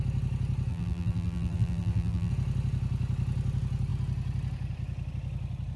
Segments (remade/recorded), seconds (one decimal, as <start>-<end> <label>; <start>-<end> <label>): 0.0-0.7 recorded; 0.7-2.3 remade; 2.3-5.8 recorded